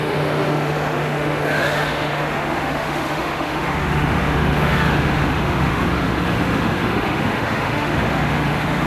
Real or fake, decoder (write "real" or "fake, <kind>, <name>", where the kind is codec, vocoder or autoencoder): fake, autoencoder, DAC-VAE